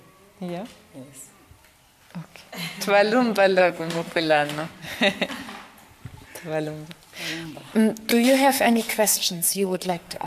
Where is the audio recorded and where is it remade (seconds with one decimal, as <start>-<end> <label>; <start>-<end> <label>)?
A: 0.0-3.6 recorded; 3.6-4.7 remade; 4.7-8.1 recorded; 8.1-10.3 remade